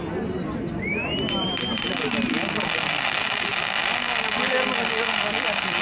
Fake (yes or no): no